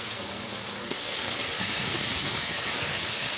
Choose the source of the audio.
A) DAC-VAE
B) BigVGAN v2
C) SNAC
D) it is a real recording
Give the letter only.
C